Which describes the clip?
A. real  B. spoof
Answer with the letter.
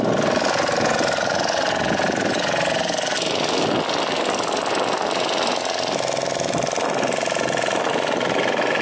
A